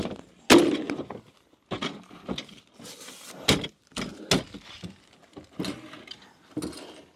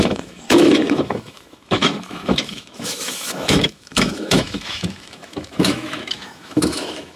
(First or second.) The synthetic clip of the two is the second